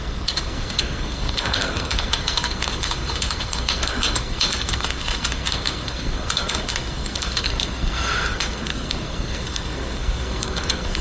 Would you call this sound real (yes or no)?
no